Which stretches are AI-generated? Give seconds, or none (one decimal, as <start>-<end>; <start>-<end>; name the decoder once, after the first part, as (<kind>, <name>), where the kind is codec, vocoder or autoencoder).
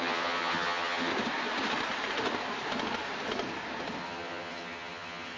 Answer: 0.0-1.1 (vocoder, HiFi-GAN); 4.0-5.4